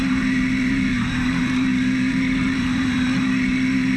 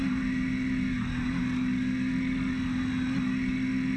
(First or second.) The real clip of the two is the second